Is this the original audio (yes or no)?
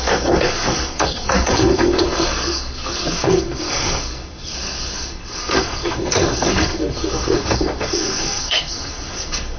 no